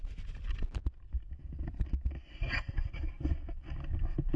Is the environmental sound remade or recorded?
recorded